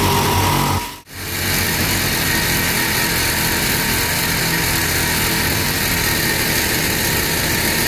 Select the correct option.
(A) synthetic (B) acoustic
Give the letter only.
B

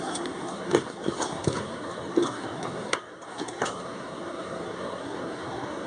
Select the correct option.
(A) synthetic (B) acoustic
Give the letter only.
A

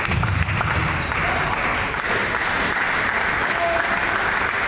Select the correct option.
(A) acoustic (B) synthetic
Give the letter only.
B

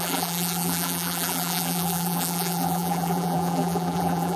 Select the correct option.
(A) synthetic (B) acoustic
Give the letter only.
A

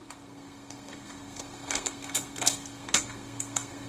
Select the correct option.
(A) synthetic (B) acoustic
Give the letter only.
A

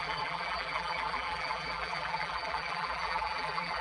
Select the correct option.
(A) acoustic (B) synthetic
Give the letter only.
B